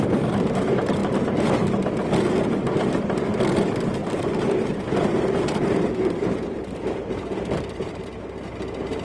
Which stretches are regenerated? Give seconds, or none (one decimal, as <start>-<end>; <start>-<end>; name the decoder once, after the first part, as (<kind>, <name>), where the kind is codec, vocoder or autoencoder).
1.0-1.6 (vocoder, BigVGAN v2); 4.0-8.2